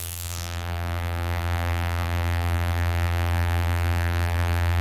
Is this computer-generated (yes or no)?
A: yes